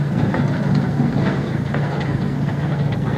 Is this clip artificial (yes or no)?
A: yes